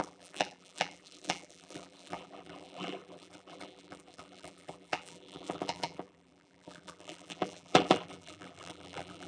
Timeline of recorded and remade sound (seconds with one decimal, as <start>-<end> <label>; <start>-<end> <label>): 0.0-9.3 remade